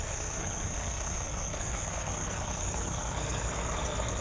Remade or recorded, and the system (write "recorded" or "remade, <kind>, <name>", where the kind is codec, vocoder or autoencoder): remade, codec, SNAC